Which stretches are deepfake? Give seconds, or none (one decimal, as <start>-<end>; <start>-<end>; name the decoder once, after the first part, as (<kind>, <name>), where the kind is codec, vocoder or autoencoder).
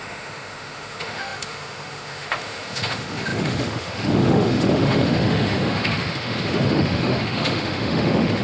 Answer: 0.0-8.4 (autoencoder, DAC-VAE)